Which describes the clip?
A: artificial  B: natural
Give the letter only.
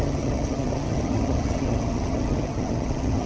A